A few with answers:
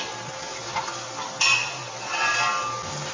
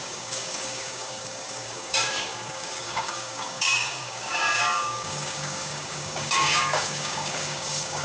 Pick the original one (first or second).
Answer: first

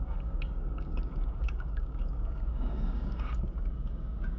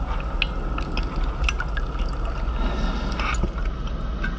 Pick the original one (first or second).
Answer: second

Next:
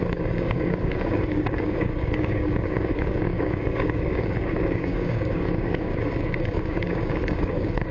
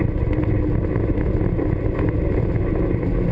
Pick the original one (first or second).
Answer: second